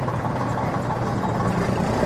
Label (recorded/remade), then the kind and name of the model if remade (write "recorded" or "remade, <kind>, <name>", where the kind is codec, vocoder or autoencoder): recorded